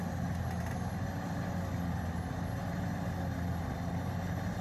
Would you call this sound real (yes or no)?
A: yes